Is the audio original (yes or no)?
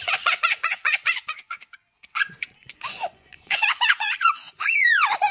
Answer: no